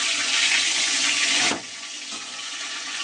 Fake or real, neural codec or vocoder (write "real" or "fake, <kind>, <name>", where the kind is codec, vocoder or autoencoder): fake, vocoder, Vocos